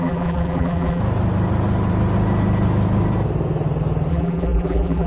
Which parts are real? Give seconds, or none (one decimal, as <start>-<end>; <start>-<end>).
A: 1.0-4.1